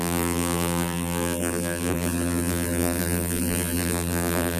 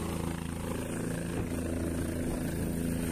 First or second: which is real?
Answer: second